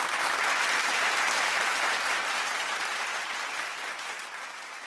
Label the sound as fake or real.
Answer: real